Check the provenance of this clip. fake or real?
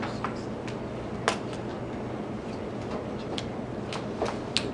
real